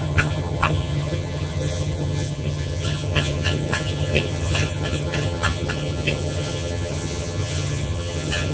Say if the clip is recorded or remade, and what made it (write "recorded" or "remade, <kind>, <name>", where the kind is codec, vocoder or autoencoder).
remade, vocoder, HiFi-GAN